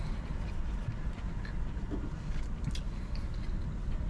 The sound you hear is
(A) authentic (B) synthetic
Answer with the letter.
A